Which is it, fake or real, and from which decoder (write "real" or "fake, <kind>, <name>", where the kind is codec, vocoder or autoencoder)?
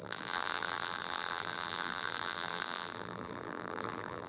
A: fake, vocoder, BigVGAN v2